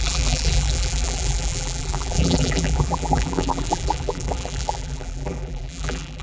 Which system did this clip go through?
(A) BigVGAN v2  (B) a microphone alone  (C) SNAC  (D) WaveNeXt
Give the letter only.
A